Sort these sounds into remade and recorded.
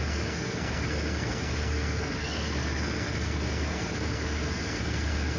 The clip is remade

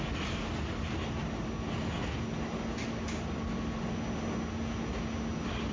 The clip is recorded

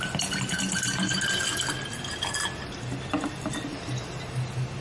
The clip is recorded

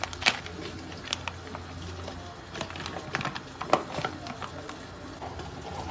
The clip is recorded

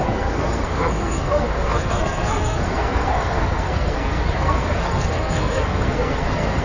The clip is remade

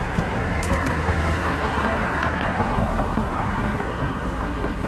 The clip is remade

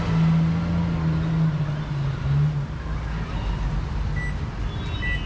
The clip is recorded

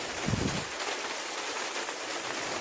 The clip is recorded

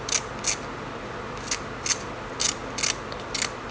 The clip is recorded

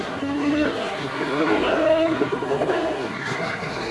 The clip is remade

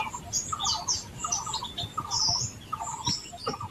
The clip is recorded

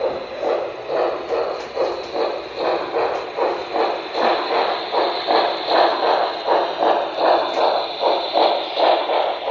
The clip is recorded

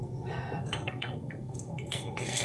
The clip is remade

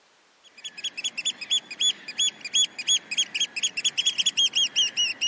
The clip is recorded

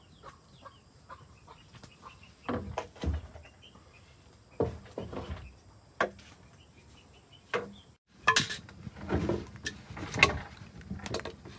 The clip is recorded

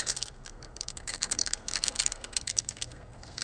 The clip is remade